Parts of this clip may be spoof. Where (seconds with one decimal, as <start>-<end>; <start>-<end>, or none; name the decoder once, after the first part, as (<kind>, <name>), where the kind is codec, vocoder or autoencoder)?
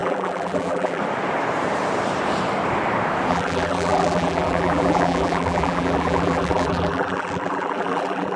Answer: 0.0-1.0 (vocoder, BigVGAN v2); 3.3-8.4